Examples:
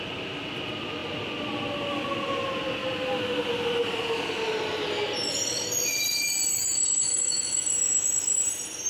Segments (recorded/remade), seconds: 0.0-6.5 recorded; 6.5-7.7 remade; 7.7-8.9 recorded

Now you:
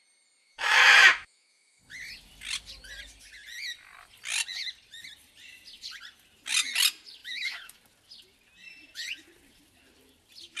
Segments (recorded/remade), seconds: 0.0-0.4 recorded; 0.4-1.8 remade; 1.8-7.2 recorded; 7.2-7.8 remade; 7.8-10.6 recorded

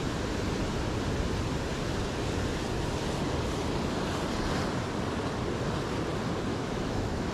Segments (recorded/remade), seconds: 0.0-6.5 recorded; 6.5-7.3 remade

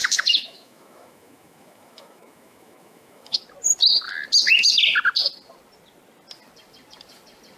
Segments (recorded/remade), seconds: 0.0-3.4 remade; 3.4-7.6 recorded